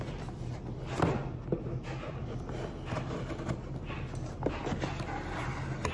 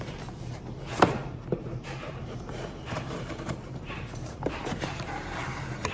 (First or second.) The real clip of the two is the first